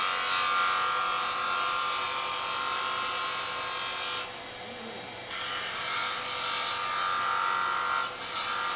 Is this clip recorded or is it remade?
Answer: recorded